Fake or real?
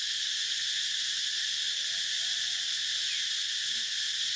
real